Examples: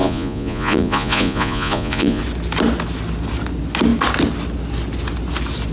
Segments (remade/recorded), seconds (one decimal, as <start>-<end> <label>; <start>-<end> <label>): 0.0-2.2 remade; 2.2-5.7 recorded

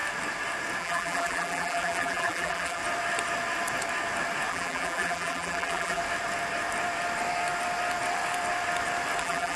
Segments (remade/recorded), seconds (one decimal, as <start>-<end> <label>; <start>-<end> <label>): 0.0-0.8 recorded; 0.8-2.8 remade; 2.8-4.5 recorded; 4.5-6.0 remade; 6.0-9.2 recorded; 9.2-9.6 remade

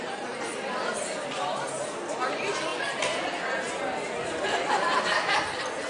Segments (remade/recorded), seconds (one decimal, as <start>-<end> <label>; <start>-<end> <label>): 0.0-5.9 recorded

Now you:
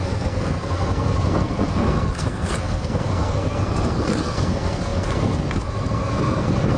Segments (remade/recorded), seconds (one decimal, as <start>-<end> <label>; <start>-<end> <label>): 0.0-6.8 remade

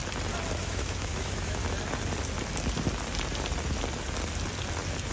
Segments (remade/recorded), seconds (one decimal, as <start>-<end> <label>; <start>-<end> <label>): 0.0-0.6 recorded; 0.6-1.6 remade; 1.6-5.1 recorded

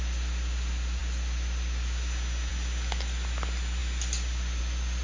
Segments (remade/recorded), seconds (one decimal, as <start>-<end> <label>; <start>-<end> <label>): 0.0-5.0 recorded

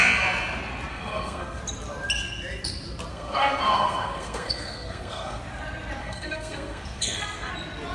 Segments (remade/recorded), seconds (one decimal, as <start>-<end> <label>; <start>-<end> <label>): 0.0-0.9 recorded; 0.9-1.6 remade; 1.6-3.1 recorded; 3.1-5.4 remade; 5.4-6.0 recorded; 6.0-7.5 remade; 7.5-7.9 recorded

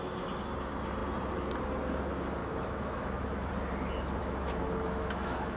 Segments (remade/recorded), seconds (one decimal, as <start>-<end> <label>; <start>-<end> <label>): 0.0-2.4 recorded; 2.4-3.5 remade; 3.5-4.2 recorded; 4.2-5.6 remade